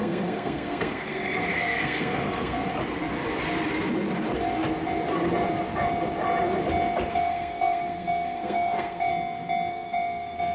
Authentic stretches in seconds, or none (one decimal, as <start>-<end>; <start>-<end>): 2.7-7.1; 9.1-9.7